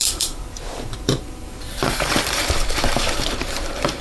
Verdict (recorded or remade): remade